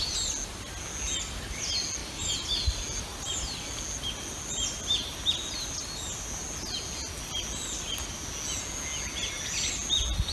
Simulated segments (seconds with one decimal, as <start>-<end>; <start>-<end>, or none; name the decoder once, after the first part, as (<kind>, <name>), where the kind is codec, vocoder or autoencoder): none